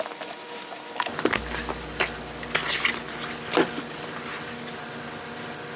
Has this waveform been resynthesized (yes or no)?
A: no